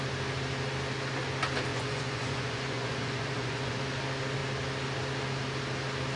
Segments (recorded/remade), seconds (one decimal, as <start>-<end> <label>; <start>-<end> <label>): 0.0-1.7 recorded; 1.7-3.8 remade; 3.8-6.2 recorded